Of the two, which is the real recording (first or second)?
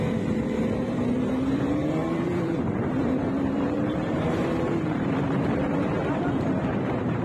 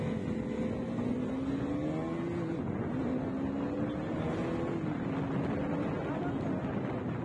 second